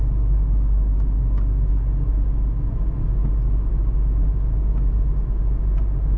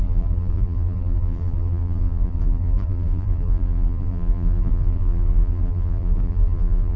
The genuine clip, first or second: first